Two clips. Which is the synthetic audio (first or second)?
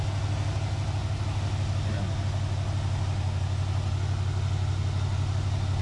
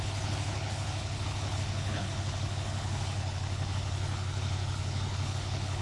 second